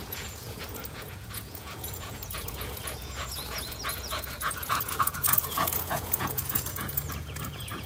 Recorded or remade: remade